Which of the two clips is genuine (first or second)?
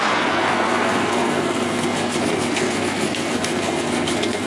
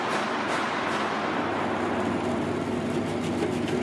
second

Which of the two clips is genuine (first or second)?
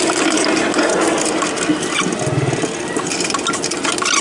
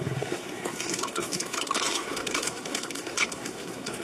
first